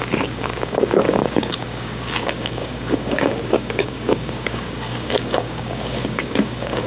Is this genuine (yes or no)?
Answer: no